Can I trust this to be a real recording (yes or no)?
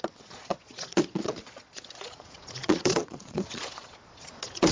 no